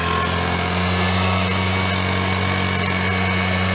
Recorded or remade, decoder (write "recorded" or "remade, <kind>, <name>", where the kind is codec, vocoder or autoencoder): recorded